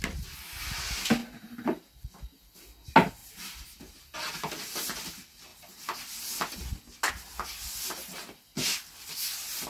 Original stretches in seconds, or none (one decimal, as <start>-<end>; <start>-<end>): 0.0-1.2; 2.1-3.2; 3.8-9.7

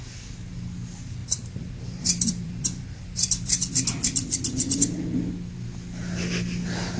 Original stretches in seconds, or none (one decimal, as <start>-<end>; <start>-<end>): 0.0-1.2; 3.7-7.0